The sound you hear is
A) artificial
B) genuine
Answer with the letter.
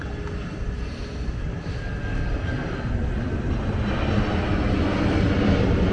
B